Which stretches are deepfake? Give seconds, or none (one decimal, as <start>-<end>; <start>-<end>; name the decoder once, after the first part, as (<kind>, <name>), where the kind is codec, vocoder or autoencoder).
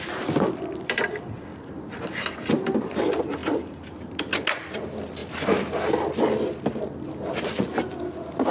none